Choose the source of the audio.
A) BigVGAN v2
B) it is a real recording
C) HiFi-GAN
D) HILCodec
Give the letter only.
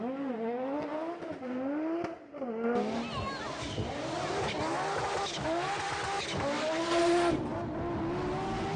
B